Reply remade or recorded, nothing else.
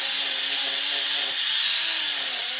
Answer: recorded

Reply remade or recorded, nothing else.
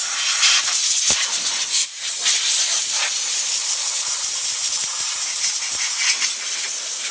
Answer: recorded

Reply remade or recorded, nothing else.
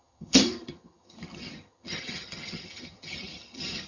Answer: remade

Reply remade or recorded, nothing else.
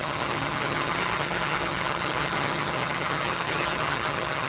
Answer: remade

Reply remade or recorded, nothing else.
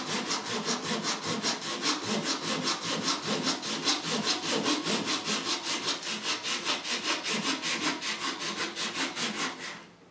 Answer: recorded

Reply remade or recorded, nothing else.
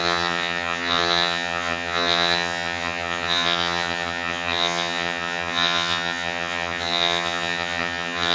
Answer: remade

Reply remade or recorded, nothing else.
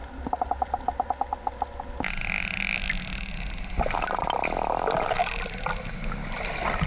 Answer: recorded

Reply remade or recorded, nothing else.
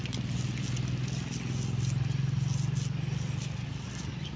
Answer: recorded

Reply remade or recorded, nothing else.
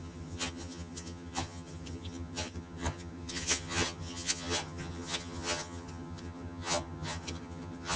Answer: remade